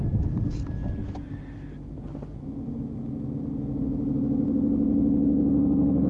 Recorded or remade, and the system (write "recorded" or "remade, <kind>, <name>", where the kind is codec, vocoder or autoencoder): recorded